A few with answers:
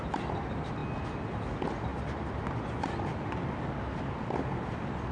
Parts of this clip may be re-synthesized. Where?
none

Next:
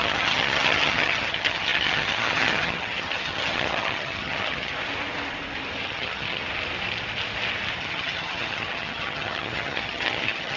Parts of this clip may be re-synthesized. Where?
0.0-4.7 (vocoder, HiFi-GAN); 5.8-6.4; 7.8-10.6

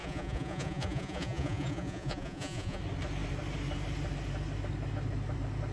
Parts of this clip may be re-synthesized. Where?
0.0-2.8 (vocoder, Vocos)

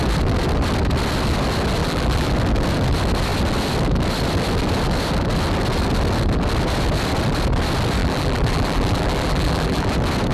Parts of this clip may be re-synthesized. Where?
1.8-2.3 (vocoder, BigVGAN v2); 8.0-9.9